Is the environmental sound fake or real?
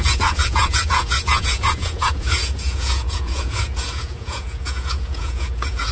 fake